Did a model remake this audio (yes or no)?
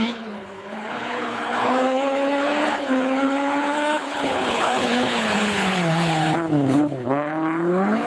yes